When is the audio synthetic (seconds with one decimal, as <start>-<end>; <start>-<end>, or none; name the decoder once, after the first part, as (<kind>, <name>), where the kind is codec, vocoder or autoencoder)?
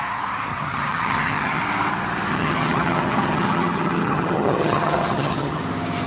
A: 0.5-1.6 (vocoder, HiFi-GAN); 2.3-5.6